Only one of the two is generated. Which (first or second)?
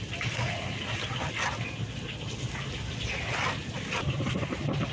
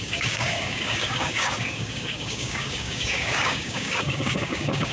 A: second